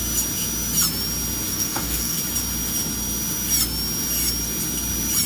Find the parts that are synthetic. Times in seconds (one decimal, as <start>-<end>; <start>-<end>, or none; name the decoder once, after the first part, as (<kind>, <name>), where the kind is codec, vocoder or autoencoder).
1.5-2.2 (codec, DAC)